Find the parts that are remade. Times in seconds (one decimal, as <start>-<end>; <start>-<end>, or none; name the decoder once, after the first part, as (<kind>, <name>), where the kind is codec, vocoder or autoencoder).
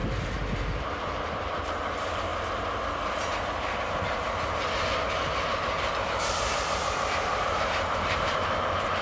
0.0-2.3 (vocoder, BigVGAN v2); 7.4-8.5